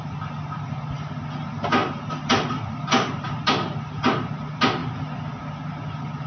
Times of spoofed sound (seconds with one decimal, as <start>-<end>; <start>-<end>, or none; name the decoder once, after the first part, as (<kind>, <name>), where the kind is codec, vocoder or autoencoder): 1.8-3.5 (vocoder, BigVGAN v2)